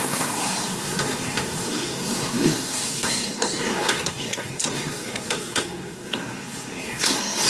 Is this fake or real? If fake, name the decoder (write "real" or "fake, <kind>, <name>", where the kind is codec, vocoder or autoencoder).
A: fake, codec, SNAC